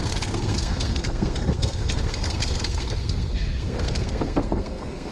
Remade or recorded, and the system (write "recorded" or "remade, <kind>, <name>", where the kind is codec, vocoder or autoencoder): remade, codec, SNAC